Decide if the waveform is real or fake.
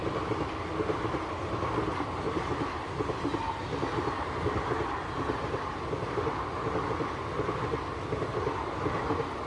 real